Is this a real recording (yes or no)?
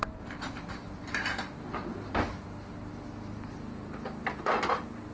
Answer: yes